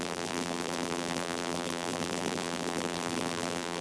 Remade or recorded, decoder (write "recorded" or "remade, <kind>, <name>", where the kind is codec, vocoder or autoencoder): remade, vocoder, BigVGAN v2